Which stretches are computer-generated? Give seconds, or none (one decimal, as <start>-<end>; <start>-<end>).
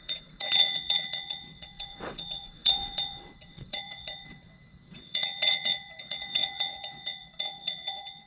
0.0-8.3